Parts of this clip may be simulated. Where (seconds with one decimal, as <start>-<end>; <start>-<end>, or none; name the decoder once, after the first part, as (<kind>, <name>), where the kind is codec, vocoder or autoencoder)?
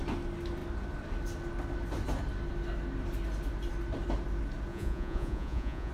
4.7-5.9 (vocoder, Vocos)